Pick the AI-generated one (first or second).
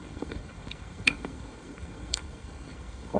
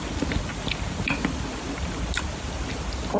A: first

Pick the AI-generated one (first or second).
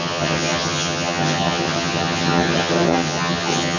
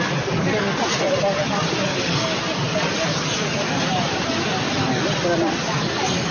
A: first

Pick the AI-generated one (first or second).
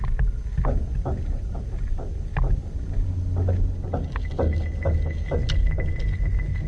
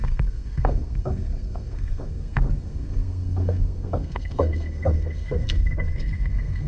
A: second